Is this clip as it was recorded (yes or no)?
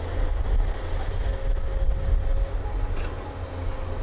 yes